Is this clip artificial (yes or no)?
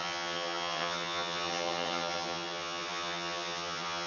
yes